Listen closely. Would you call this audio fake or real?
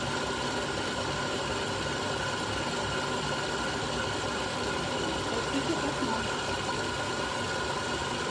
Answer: real